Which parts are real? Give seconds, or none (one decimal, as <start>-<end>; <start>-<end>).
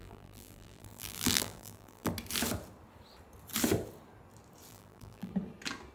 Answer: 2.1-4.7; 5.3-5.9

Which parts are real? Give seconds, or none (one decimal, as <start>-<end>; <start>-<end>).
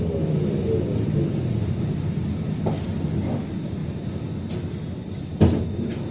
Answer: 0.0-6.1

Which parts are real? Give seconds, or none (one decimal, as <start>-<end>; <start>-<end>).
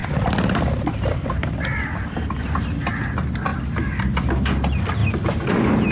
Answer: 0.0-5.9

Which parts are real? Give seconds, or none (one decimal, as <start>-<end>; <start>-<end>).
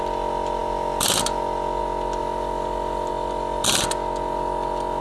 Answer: 0.0-2.2; 3.1-5.0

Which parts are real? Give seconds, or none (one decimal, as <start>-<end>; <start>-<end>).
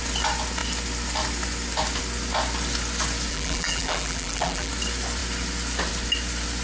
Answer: 0.0-3.3; 4.7-6.6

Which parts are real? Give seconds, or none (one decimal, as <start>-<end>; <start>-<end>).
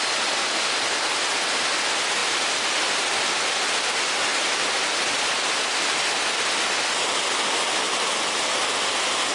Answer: 0.0-2.2; 3.0-9.3